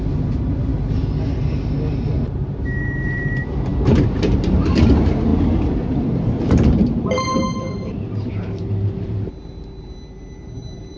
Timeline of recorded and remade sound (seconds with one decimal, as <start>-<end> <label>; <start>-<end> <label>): 0.0-0.7 remade; 0.7-2.1 recorded; 2.1-11.0 remade